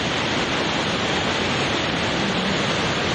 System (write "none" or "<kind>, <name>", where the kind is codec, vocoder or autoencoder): none